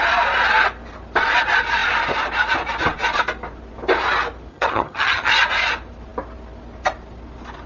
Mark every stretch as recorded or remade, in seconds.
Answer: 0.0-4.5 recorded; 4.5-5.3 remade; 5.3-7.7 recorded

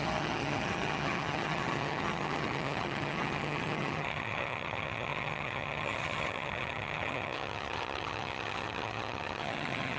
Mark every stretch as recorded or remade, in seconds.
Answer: 0.0-10.0 remade

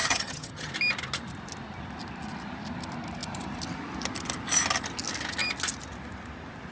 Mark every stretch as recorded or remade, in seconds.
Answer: 0.0-0.7 remade; 0.7-6.7 recorded

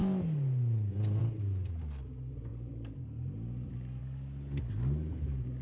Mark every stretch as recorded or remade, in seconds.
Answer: 0.0-5.6 recorded

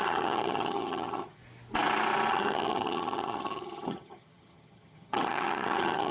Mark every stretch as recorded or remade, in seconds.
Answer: 0.0-1.4 remade; 1.4-2.3 recorded; 2.3-6.1 remade